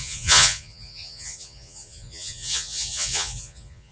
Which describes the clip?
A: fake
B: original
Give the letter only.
A